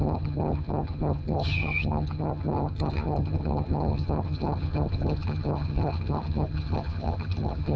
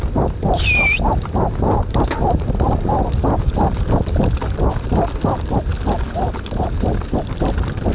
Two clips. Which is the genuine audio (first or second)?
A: second